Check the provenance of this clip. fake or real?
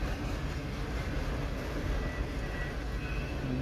real